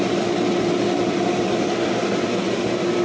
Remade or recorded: recorded